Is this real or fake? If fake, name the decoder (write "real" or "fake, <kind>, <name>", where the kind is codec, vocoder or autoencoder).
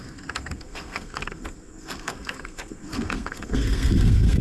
fake, codec, SNAC